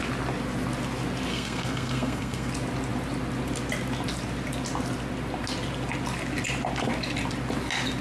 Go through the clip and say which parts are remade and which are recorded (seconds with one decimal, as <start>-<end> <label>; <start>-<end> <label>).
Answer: 0.0-1.3 recorded; 1.3-2.5 remade; 2.5-8.0 recorded